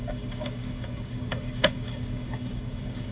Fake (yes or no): yes